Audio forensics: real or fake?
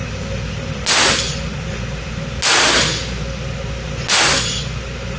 real